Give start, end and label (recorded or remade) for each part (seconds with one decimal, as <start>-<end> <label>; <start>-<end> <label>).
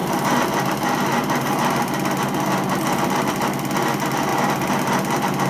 0.0-5.5 recorded